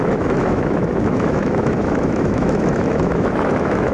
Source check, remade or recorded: remade